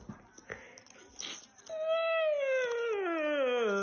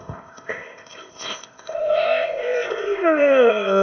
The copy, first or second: second